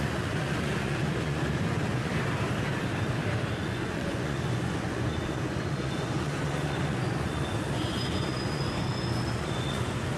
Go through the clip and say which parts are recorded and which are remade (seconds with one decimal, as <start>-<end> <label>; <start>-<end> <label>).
0.0-2.1 remade; 2.1-3.5 recorded; 3.5-10.2 remade